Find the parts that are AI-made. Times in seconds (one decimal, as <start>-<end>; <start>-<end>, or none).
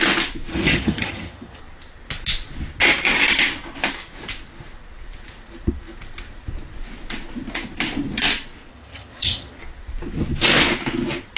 0.5-1.6; 8.7-9.6